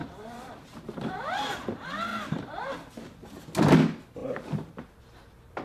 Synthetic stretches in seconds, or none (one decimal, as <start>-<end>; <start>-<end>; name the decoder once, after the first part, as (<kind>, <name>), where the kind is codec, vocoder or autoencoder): 0.0-1.2 (vocoder, BigVGAN v2); 2.1-3.4; 4.2-4.8

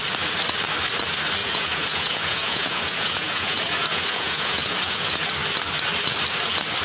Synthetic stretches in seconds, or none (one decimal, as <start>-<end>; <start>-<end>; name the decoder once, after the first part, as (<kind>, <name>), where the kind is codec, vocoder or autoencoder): 1.4-5.2 (vocoder, Vocos)

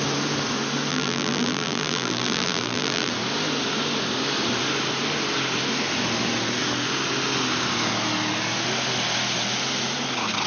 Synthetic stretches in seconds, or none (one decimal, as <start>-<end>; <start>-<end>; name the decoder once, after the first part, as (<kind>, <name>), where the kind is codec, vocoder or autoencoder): 0.9-3.1 (vocoder, BigVGAN v2)

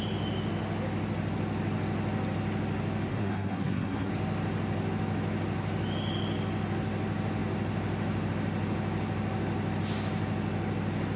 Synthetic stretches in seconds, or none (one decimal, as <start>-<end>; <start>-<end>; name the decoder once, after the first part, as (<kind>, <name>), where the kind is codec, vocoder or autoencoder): 3.1-4.1 (codec, SNAC)